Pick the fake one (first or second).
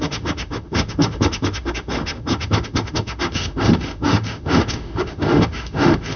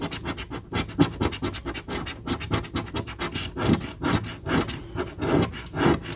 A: first